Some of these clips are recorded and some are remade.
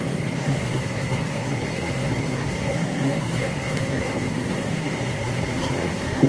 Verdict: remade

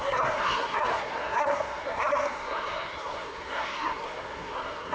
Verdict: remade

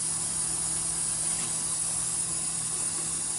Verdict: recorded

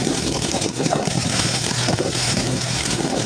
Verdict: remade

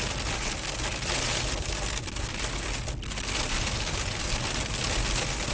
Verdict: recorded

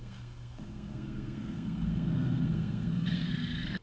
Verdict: remade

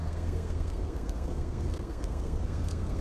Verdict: remade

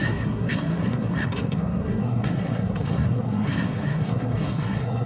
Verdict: remade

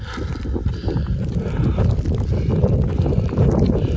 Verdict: recorded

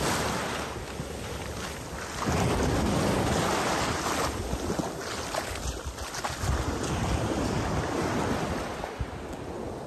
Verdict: recorded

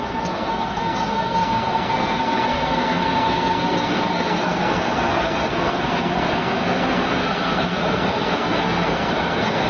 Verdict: remade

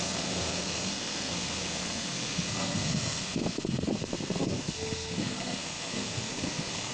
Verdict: remade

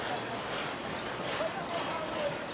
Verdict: recorded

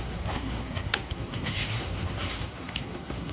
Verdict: remade